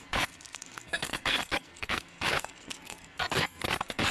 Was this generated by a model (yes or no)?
yes